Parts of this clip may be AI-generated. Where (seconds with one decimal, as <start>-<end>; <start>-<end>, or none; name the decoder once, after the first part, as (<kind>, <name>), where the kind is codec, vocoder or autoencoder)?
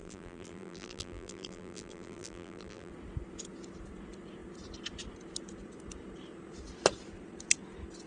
0.0-2.9 (vocoder, BigVGAN v2)